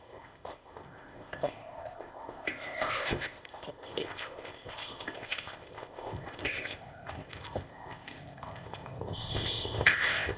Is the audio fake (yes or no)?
yes